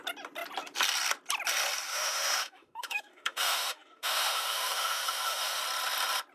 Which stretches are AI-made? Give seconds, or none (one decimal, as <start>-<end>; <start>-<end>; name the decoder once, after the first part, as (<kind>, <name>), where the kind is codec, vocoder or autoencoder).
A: 1.9-5.6 (autoencoder, DAC-VAE)